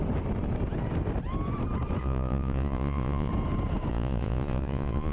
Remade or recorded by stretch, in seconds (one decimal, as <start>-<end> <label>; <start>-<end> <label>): 0.0-2.0 recorded; 2.0-3.3 remade; 3.3-3.9 recorded; 3.9-5.1 remade